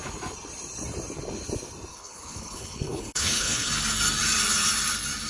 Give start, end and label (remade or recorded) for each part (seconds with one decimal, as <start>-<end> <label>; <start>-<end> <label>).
0.0-1.9 recorded; 1.9-3.7 remade; 3.7-5.3 recorded